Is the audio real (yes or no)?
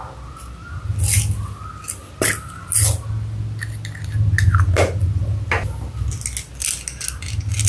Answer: yes